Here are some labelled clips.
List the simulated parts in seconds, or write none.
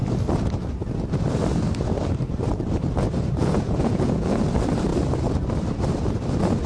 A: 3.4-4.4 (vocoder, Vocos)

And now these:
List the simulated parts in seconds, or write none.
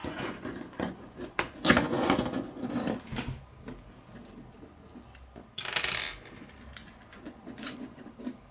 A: 0.0-2.6 (vocoder, Vocos); 6.8-8.1